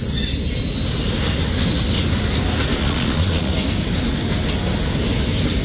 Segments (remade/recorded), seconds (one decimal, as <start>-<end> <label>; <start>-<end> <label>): 0.0-2.8 recorded; 2.8-3.5 remade; 3.5-5.6 recorded